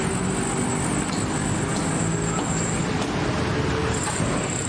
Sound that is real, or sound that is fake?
real